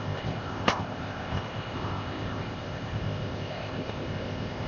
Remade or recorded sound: remade